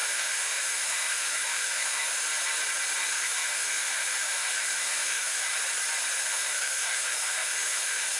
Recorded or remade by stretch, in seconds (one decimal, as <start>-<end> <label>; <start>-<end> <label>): 0.0-2.1 remade; 2.1-3.0 recorded; 3.0-5.5 remade; 5.5-6.2 recorded; 6.2-8.2 remade